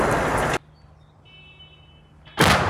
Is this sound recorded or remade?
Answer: recorded